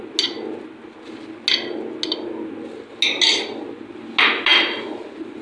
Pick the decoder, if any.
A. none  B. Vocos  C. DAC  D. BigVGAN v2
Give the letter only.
A